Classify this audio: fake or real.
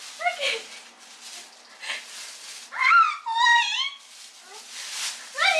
real